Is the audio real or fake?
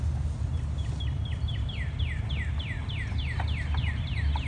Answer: real